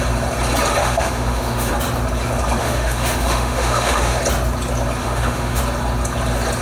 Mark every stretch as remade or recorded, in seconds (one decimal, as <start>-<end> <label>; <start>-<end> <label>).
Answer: 0.0-0.8 recorded; 0.8-1.7 remade; 1.7-2.6 recorded; 2.6-4.2 remade; 4.2-5.0 recorded; 5.0-5.6 remade; 5.6-6.6 recorded